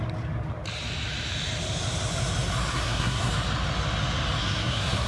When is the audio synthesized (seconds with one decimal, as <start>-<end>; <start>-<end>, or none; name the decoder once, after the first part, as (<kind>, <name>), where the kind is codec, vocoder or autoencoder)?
2.7-3.3 (codec, SNAC); 4.4-5.1

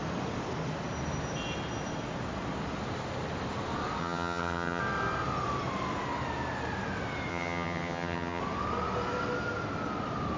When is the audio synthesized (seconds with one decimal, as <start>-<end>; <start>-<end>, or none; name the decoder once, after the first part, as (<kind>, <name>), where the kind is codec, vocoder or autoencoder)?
4.0-4.8 (vocoder, HiFi-GAN); 7.3-8.4

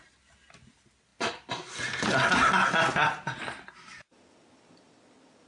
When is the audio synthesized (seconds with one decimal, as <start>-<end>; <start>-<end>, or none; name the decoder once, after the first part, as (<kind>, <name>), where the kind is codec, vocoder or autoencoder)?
none

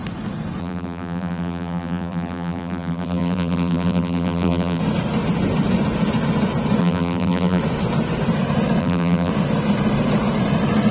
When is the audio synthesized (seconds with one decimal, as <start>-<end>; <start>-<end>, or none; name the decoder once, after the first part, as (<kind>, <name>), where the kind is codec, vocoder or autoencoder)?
0.6-4.8 (vocoder, BigVGAN v2); 6.8-7.6; 8.8-9.3

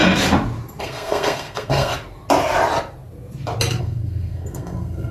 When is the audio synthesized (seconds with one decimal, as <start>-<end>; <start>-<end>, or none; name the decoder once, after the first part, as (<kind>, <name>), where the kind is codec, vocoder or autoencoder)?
0.8-1.9 (codec, SNAC); 3.8-5.1